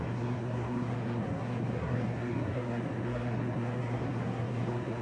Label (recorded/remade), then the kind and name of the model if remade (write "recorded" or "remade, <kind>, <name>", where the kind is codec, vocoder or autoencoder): remade, codec, SNAC